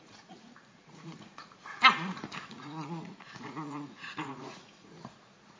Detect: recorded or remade remade